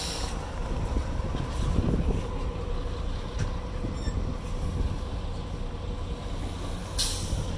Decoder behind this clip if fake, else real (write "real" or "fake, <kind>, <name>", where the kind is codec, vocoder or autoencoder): real